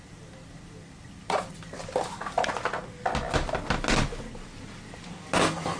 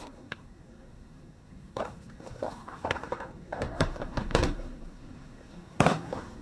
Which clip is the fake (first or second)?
second